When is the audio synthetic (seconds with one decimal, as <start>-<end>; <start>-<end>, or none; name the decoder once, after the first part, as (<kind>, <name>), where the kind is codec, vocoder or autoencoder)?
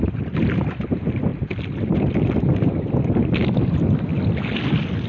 1.3-2.7 (vocoder, BigVGAN v2)